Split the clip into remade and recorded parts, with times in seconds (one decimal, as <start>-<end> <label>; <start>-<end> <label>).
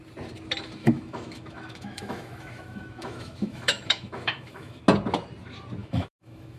0.0-0.8 recorded; 0.8-4.8 remade; 4.8-5.8 recorded; 5.8-6.6 remade